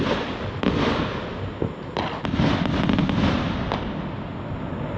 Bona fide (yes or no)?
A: yes